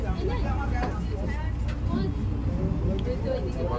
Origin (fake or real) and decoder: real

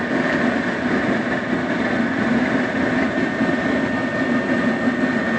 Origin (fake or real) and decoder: real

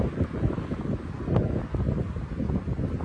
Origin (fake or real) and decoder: real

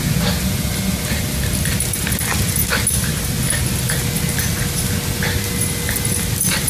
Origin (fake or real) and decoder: real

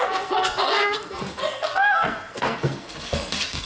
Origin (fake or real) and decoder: fake, codec, SNAC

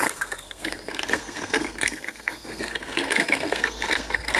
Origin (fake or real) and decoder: fake, codec, SNAC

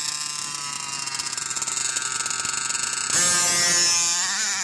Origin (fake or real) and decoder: real